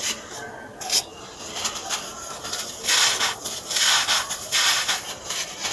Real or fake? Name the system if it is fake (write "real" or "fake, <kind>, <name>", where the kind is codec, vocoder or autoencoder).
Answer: real